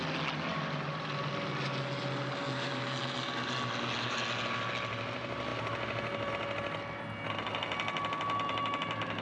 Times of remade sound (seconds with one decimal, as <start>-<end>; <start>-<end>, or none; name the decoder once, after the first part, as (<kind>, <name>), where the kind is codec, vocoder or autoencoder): none